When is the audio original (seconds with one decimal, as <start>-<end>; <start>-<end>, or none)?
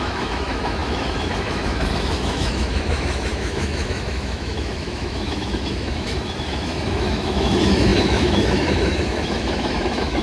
none